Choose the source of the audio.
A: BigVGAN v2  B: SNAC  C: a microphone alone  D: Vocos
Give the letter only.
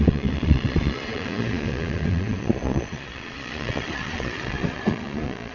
D